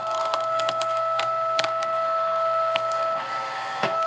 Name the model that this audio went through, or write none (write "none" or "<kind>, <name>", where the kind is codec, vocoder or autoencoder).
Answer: codec, SNAC